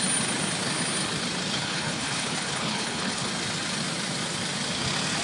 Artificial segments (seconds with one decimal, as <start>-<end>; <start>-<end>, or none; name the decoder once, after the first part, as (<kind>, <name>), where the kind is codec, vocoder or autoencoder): 1.6-3.3 (codec, HILCodec)